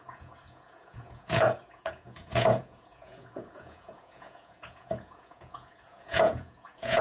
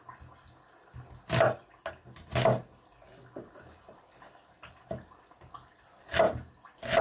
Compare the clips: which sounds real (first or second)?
second